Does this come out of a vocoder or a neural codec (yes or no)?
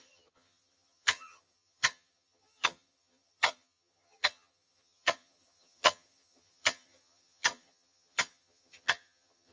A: yes